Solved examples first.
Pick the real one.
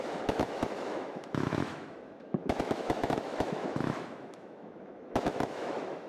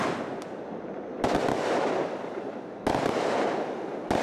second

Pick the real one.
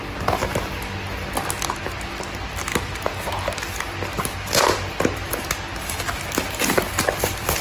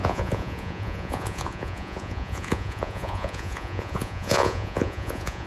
first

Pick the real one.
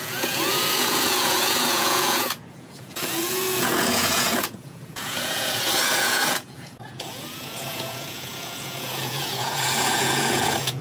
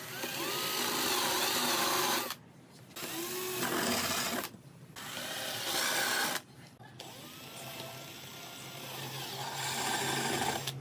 second